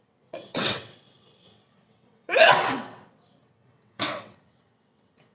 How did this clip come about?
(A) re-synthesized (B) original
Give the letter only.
A